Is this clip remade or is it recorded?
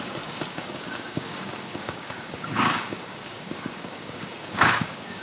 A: remade